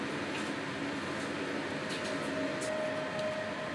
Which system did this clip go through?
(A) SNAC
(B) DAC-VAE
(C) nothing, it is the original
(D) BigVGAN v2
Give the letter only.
C